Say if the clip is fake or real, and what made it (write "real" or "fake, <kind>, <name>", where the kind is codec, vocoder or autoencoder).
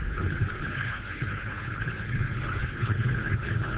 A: fake, codec, HILCodec